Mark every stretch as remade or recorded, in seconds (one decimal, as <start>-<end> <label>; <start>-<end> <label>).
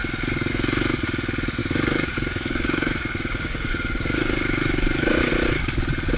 0.0-1.6 recorded; 1.6-5.3 remade; 5.3-6.2 recorded